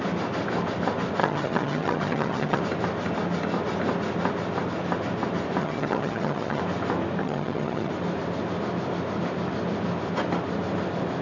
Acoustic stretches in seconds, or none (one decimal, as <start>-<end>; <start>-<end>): 0.0-1.2; 2.6-5.6; 6.6-7.2; 7.9-11.2